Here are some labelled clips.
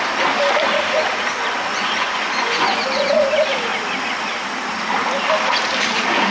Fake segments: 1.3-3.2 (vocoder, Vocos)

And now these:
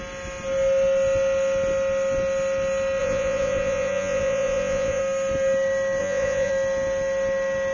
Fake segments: 3.0-5.0 (vocoder, Vocos); 6.0-6.5

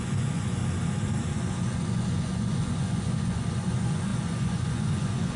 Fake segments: 0.0-0.6 (vocoder, Vocos); 1.3-5.4

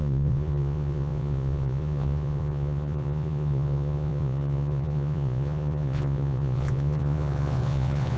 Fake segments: 0.0-8.2 (vocoder, Vocos)

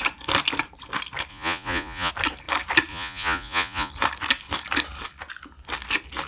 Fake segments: 1.3-2.1 (vocoder, Vocos); 2.9-3.9

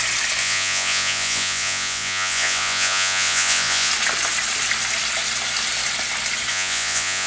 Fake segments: 0.4-3.9 (vocoder, Vocos); 6.5-7.3

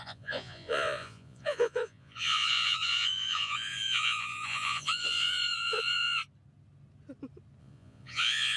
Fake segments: 0.0-6.2 (vocoder, Vocos); 7.6-8.6

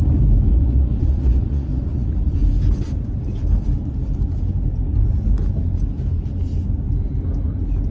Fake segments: 0.5-2.3 (vocoder, Vocos)